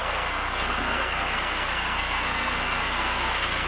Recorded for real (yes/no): no